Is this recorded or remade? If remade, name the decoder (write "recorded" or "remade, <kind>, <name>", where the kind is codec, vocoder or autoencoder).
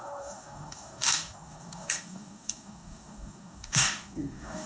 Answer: remade, codec, DAC